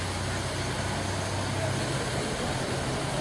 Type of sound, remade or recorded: recorded